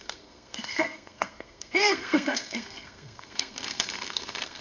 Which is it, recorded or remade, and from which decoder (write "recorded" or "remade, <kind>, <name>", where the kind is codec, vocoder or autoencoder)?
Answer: remade, codec, SNAC